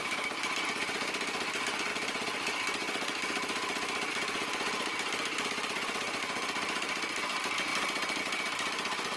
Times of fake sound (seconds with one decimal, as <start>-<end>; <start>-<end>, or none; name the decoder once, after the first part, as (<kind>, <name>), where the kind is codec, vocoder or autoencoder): 0.0-9.2 (vocoder, BigVGAN v2)